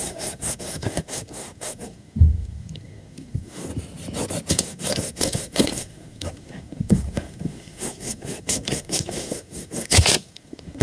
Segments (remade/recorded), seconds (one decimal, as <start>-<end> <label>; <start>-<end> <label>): 0.0-3.7 remade; 3.7-4.5 recorded; 4.5-10.8 remade